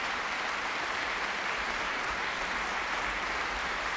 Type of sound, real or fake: fake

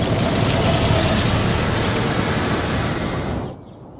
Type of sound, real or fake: real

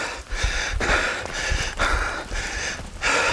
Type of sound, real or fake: fake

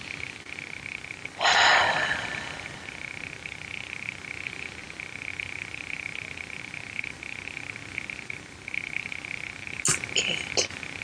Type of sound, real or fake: real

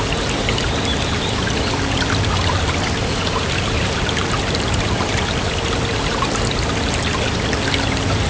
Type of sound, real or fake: fake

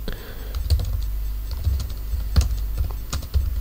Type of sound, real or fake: real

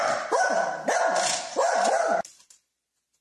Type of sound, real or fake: fake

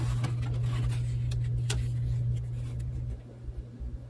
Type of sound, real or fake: real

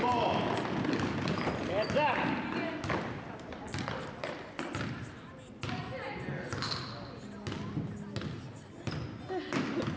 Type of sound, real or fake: real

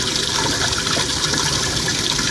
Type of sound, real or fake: real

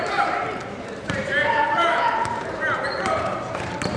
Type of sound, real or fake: fake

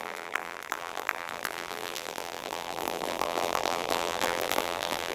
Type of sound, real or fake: fake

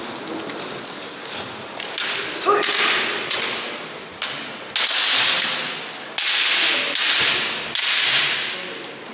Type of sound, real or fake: real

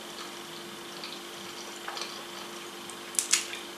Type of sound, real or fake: real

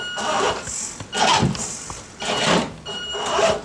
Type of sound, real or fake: real